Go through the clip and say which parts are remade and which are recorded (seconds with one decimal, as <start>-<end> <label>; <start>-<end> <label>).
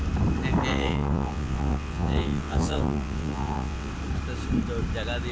0.0-0.7 recorded; 0.7-3.9 remade; 3.9-5.3 recorded